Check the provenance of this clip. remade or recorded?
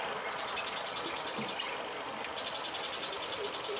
recorded